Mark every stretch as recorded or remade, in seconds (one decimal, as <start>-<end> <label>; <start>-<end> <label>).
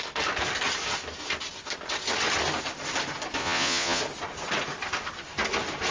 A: 0.0-3.4 recorded; 3.4-4.0 remade; 4.0-5.9 recorded